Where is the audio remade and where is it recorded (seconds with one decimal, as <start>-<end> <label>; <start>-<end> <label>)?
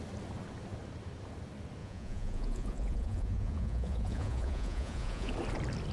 0.0-1.8 recorded; 1.8-5.3 remade; 5.3-5.9 recorded